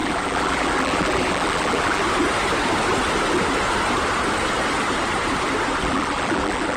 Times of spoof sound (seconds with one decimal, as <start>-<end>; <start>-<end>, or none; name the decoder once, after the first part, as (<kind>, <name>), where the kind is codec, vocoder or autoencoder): 0.0-2.0 (vocoder, BigVGAN v2); 5.8-6.8